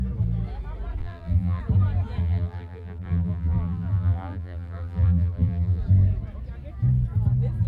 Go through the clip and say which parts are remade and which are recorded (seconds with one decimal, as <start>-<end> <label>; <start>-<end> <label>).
0.0-1.0 recorded; 1.0-1.6 remade; 1.6-2.2 recorded; 2.2-5.8 remade; 5.8-7.7 recorded

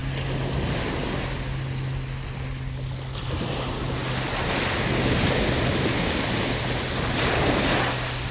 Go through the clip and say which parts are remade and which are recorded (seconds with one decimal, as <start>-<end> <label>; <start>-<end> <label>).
0.0-8.3 recorded

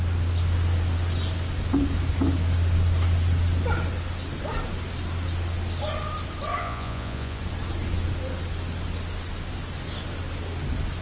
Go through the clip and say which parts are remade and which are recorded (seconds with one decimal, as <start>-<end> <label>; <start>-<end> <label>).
0.0-6.6 recorded; 6.6-7.4 remade; 7.4-11.0 recorded

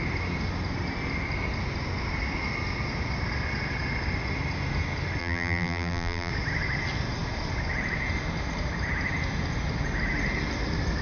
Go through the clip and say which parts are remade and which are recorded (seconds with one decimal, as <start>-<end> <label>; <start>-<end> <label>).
0.0-5.2 recorded; 5.2-6.3 remade; 6.3-11.0 recorded